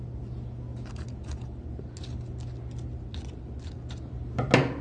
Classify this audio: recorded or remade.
recorded